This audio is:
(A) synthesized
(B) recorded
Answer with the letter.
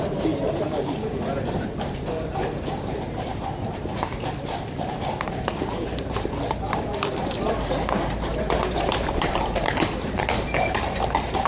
A